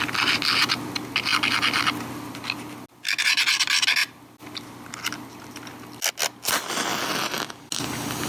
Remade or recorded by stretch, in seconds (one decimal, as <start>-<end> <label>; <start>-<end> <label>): 0.0-8.3 recorded